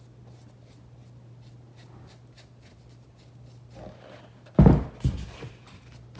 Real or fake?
real